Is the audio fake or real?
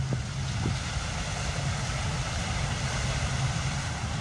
real